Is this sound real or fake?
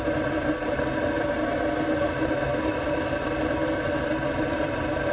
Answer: real